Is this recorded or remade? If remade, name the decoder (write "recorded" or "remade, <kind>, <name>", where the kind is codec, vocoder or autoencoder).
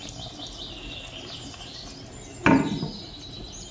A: recorded